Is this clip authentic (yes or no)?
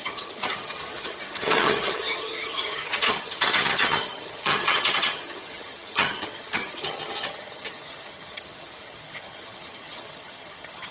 no